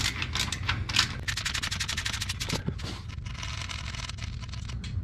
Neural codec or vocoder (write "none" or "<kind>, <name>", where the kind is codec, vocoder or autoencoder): none